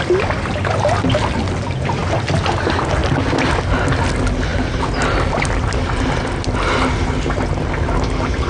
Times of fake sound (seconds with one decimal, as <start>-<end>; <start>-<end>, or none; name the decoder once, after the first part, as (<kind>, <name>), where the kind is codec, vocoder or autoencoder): none